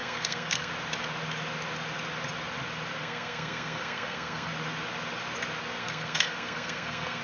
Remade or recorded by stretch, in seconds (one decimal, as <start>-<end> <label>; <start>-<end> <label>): 0.0-0.7 remade; 0.7-3.0 recorded; 3.0-4.5 remade; 4.5-5.8 recorded; 5.8-7.2 remade